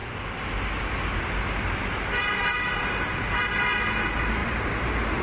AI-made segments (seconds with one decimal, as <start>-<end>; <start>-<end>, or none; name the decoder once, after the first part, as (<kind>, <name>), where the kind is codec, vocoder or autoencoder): 4.4-5.2 (vocoder, BigVGAN v2)